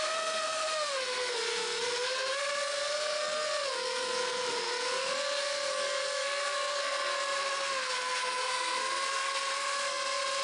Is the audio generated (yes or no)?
yes